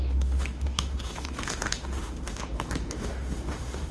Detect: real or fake fake